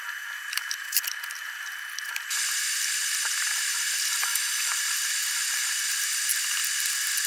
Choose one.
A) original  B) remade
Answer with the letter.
B